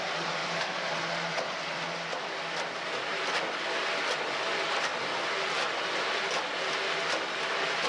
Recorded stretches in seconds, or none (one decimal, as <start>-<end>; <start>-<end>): 0.0-7.9